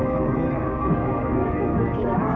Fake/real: fake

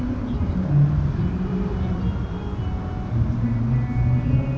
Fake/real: real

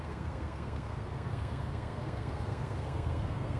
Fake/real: fake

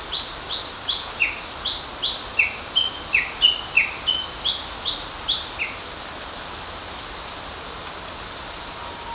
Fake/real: real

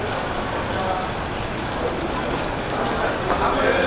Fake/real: real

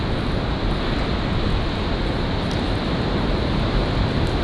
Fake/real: real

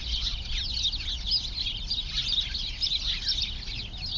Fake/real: real